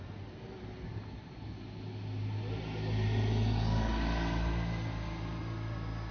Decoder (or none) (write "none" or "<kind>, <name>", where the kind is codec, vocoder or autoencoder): none